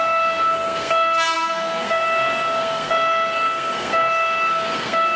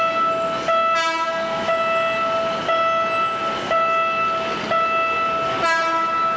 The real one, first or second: second